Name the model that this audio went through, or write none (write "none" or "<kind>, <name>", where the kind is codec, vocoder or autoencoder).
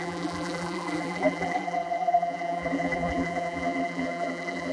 vocoder, BigVGAN v2